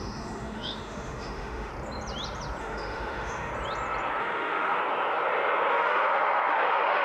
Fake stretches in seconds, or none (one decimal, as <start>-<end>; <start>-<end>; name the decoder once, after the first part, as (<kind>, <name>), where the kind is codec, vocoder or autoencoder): 0.0-1.7 (autoencoder, DAC-VAE); 2.6-3.5; 4.2-4.8; 5.7-7.0